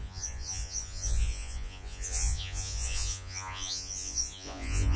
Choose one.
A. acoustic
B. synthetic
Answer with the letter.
B